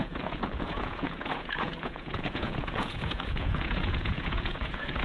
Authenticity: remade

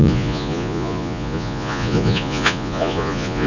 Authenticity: remade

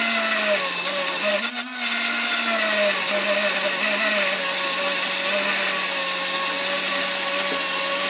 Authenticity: recorded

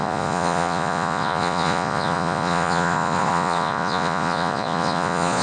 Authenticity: remade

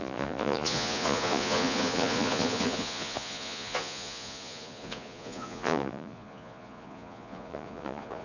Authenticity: remade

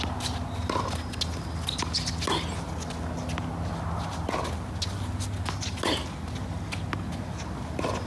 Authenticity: recorded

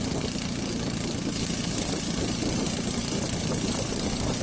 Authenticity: recorded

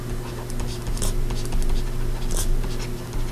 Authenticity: recorded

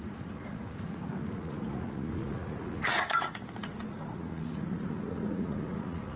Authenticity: remade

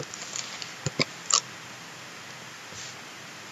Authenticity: recorded